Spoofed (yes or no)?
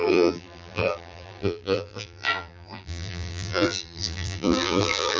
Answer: yes